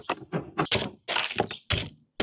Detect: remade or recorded recorded